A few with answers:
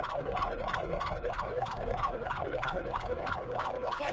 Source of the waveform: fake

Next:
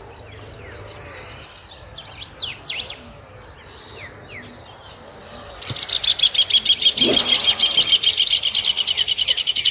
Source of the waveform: real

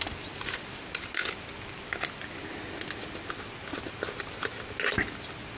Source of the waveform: real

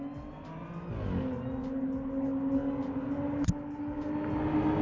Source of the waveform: real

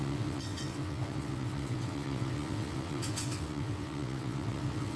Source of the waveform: fake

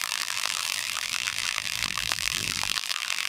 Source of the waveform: fake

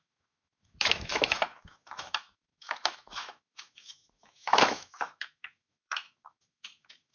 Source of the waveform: fake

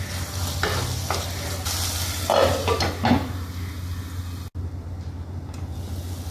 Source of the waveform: real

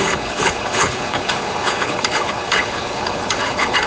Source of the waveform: fake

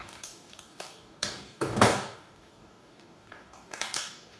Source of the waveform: fake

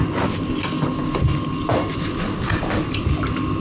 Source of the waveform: real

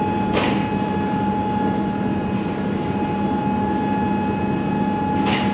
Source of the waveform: real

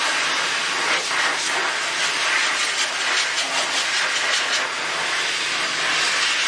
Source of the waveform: real